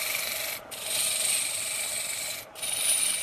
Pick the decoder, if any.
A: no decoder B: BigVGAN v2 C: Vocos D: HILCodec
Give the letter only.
A